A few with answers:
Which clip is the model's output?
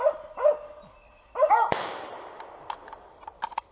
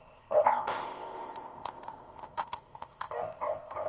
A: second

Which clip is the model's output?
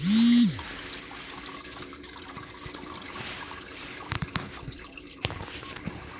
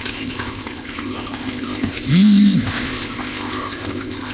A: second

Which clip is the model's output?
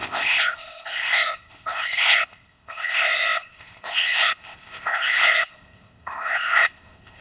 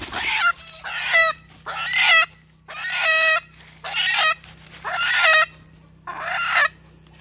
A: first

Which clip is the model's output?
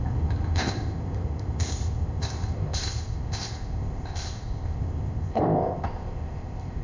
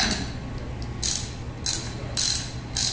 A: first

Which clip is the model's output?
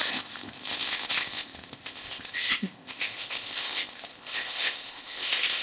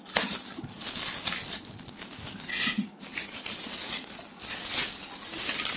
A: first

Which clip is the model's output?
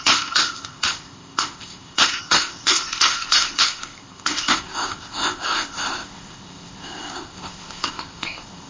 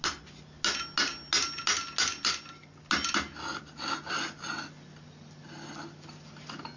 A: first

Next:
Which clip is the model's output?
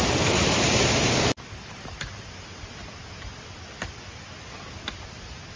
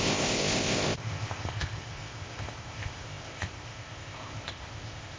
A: second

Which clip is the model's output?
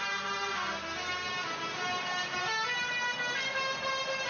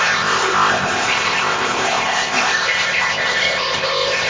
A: second